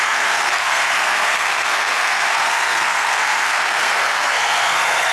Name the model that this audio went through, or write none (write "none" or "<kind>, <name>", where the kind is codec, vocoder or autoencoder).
codec, SNAC